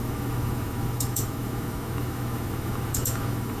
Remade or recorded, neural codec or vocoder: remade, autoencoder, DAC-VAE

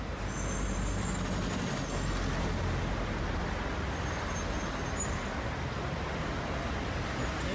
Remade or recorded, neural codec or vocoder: recorded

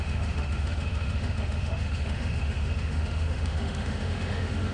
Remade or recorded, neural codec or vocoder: remade, autoencoder, DAC-VAE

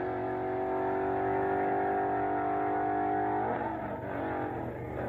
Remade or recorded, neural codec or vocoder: recorded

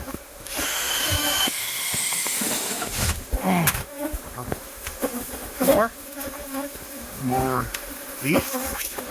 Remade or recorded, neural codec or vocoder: remade, autoencoder, DAC-VAE